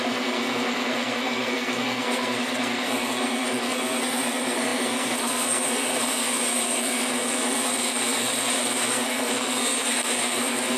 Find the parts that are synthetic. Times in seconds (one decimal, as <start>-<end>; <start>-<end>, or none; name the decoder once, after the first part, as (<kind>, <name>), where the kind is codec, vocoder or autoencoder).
0.0-10.8 (codec, SNAC)